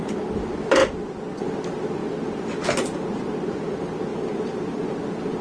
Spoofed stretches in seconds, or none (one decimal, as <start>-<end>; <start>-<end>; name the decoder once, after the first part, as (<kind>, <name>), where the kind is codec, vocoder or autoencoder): none